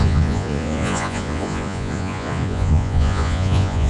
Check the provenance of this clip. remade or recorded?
remade